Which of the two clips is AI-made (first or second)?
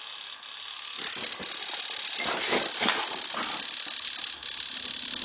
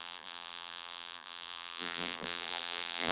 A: second